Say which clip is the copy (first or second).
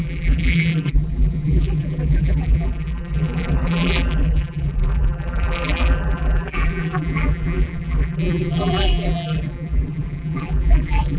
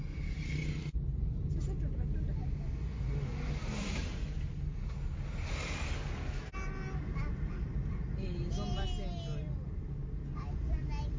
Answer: first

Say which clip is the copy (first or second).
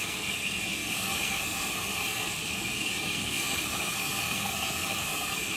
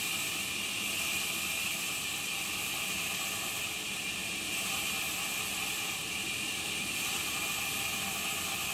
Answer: first